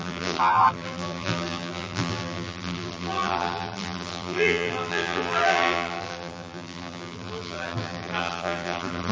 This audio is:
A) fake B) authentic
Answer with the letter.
A